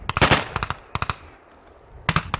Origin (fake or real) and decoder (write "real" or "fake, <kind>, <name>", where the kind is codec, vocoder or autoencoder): real